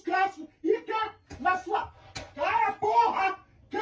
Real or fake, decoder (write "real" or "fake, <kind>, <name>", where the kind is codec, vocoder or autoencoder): real